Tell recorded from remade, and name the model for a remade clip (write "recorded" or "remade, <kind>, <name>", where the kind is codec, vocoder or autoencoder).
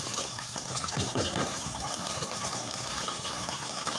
remade, codec, SNAC